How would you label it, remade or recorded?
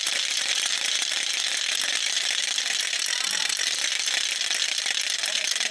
recorded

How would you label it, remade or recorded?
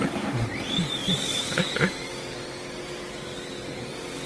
recorded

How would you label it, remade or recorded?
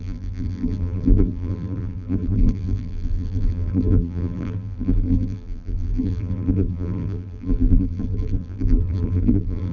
remade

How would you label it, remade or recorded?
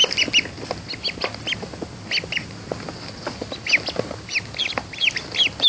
recorded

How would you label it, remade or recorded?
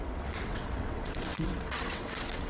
remade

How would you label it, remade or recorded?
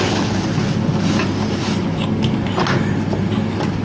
recorded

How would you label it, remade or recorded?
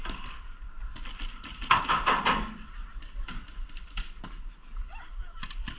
recorded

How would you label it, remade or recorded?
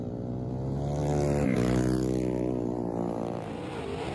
recorded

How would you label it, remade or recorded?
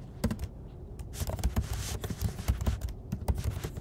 recorded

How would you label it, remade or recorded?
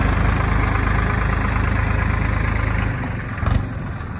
recorded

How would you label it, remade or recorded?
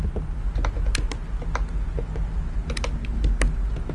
recorded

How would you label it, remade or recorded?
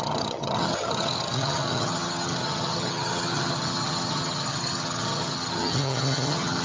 remade